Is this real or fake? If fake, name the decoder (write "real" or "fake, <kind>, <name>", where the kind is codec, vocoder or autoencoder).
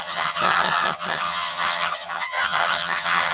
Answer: fake, vocoder, HiFi-GAN